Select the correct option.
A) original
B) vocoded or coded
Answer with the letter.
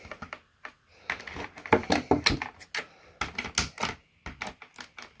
A